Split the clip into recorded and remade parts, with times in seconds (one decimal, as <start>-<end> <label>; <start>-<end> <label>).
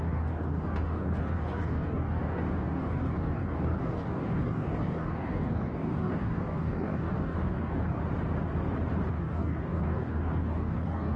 0.0-8.0 remade; 8.0-9.1 recorded; 9.1-11.2 remade